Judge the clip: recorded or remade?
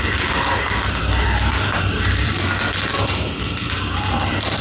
remade